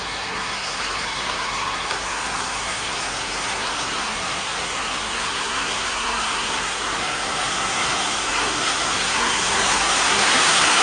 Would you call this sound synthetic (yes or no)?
yes